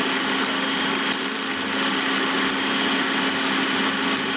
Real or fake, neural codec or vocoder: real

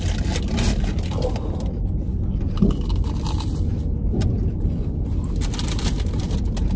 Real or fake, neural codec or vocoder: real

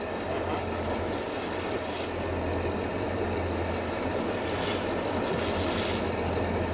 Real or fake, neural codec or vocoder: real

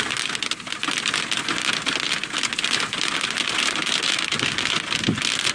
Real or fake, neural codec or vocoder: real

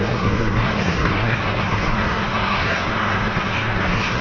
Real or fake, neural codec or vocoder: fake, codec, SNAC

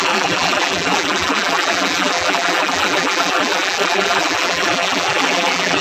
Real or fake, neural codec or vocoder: fake, vocoder, BigVGAN v2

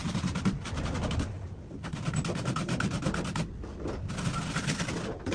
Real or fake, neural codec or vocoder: real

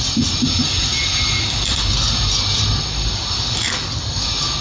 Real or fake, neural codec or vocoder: real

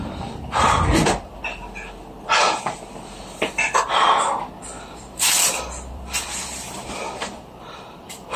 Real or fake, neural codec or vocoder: fake, vocoder, BigVGAN v2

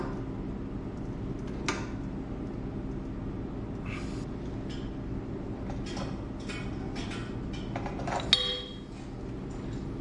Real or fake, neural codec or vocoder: real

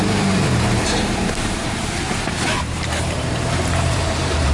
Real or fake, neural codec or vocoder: fake, vocoder, BigVGAN v2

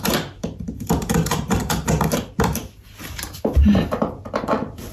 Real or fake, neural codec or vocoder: fake, vocoder, BigVGAN v2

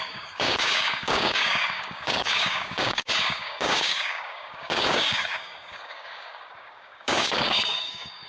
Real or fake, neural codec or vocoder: fake, codec, DAC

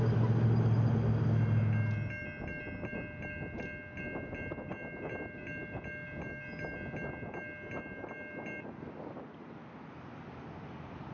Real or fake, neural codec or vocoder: real